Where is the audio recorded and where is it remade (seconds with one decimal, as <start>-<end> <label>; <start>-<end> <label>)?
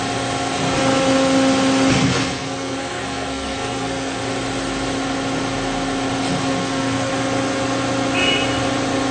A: 0.0-2.0 recorded; 2.0-4.2 remade; 4.2-6.6 recorded; 6.6-7.1 remade; 7.1-9.1 recorded